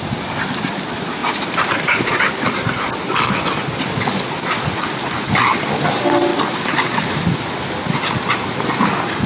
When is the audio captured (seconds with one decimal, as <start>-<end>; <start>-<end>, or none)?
0.0-1.2; 2.2-6.3; 7.0-9.3